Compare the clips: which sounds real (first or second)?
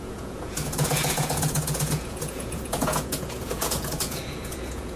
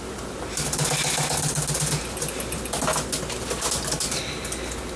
second